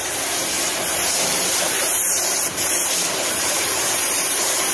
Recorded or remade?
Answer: remade